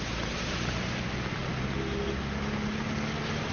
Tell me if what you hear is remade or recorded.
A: recorded